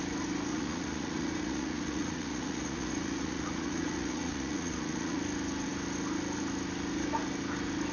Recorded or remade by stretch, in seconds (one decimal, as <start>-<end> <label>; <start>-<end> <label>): 0.0-0.5 recorded; 0.5-5.2 remade; 5.2-7.9 recorded

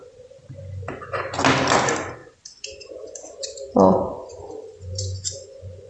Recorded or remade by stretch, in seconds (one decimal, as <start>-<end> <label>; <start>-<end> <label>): 0.0-2.2 recorded; 2.2-5.9 remade